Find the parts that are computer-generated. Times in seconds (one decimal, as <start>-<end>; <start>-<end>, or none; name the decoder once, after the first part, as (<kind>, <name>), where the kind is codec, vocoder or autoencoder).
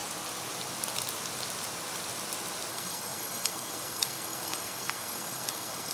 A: 2.7-5.9 (codec, SNAC)